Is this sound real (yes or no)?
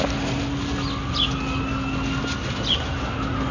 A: yes